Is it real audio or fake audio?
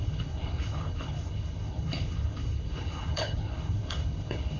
fake